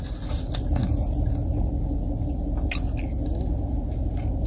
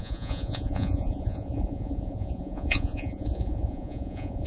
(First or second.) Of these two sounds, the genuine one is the first